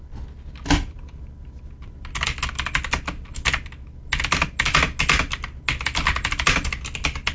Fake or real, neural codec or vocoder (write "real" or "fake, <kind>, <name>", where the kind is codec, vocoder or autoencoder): real